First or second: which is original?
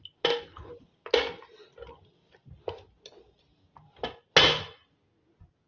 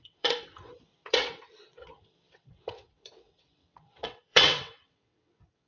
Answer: first